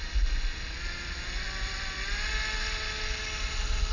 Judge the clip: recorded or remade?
recorded